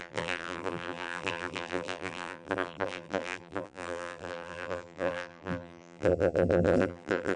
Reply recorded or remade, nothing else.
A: remade